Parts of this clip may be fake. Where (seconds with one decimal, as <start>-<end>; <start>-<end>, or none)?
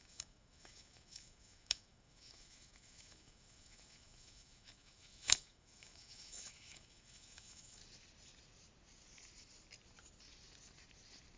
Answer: 0.0-7.8